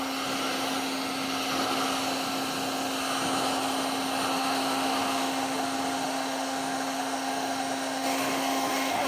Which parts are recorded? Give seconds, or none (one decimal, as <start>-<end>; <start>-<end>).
0.0-4.3